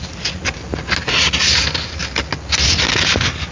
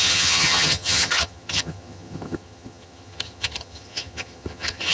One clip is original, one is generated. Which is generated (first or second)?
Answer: second